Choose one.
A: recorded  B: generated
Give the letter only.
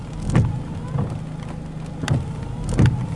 A